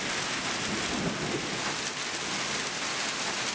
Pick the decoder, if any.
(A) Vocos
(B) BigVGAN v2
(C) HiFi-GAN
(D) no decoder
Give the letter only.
D